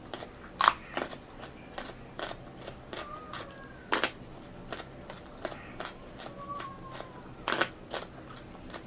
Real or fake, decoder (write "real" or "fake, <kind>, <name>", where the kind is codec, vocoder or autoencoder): real